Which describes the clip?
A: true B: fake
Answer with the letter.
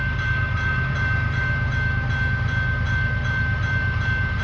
B